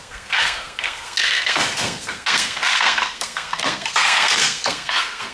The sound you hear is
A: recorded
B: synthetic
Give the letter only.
B